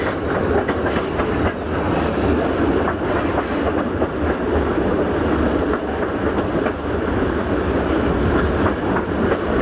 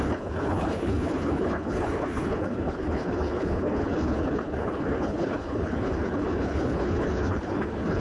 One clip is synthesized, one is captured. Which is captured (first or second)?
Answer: first